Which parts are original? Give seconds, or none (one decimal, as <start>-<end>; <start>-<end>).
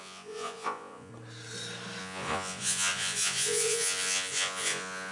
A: 1.1-2.0